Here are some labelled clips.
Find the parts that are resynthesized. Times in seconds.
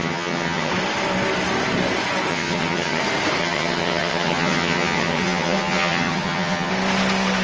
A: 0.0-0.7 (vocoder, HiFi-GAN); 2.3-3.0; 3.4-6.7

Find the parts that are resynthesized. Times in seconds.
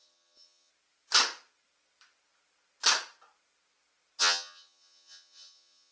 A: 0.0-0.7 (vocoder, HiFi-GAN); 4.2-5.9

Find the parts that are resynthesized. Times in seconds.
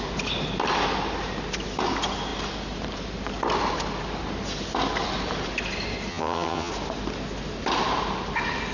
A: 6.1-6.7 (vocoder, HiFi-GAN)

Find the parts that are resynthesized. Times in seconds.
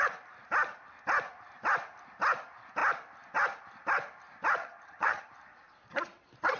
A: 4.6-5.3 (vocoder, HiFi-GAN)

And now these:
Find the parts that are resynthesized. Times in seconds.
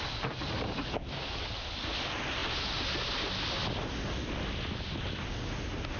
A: none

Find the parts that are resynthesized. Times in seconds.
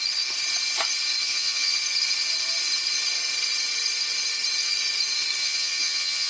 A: 1.2-1.8 (vocoder, HiFi-GAN); 5.4-6.3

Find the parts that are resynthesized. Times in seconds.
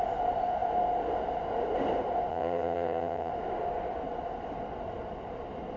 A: 2.3-3.3 (vocoder, HiFi-GAN)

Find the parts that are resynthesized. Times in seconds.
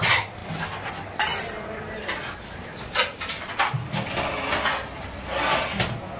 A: none